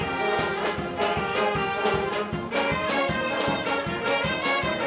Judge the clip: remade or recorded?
recorded